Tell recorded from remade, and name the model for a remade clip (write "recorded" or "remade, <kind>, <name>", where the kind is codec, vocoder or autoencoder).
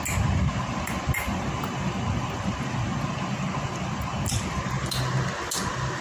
recorded